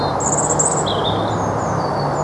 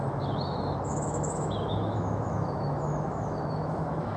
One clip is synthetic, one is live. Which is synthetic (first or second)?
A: second